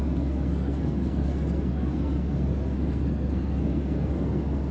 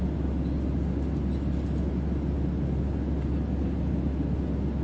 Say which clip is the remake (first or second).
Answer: first